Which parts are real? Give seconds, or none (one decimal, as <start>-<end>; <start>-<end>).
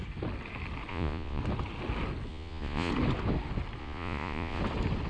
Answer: 0.0-0.9; 1.4-2.3; 2.9-3.8; 4.6-5.1